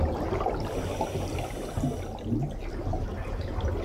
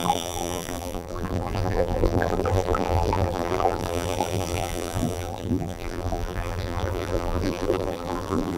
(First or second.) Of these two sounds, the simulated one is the second